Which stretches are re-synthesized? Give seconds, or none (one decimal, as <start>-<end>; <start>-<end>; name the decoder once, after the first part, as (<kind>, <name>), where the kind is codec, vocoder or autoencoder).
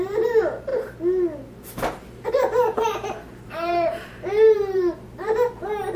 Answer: 0.0-0.7 (vocoder, BigVGAN v2); 2.3-6.0